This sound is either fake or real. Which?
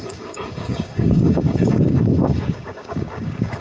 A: fake